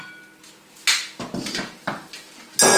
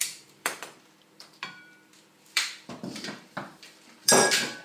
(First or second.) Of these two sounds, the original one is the first